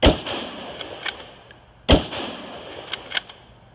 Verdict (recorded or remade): recorded